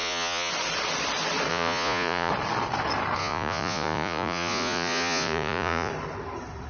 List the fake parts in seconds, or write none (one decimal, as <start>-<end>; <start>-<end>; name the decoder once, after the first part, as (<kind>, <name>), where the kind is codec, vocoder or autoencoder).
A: 0.0-0.5 (vocoder, Vocos); 1.5-2.3; 3.2-5.9